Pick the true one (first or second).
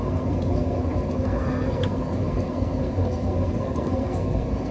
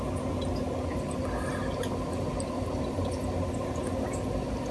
second